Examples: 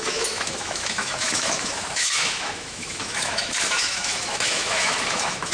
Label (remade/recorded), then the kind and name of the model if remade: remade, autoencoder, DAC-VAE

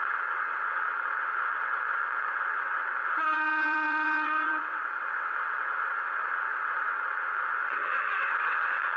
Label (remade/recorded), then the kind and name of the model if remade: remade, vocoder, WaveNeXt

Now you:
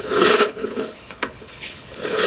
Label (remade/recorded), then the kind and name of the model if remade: remade, codec, HILCodec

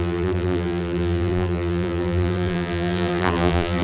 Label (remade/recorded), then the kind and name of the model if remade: remade, vocoder, BigVGAN v2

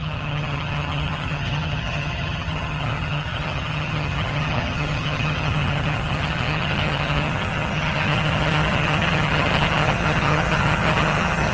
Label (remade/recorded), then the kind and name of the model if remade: remade, vocoder, HiFi-GAN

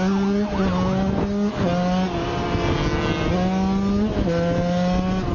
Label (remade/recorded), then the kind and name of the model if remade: recorded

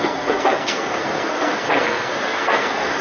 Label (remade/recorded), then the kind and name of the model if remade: remade, codec, SNAC